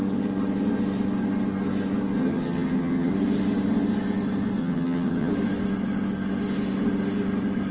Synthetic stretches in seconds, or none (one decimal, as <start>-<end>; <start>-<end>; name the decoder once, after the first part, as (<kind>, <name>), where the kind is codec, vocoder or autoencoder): 2.2-3.1 (vocoder, HiFi-GAN); 4.6-5.3